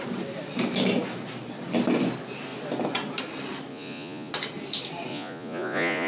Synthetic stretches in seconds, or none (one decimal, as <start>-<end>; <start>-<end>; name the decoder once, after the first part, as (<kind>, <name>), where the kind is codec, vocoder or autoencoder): 3.7-4.3 (vocoder, Vocos); 5.1-6.1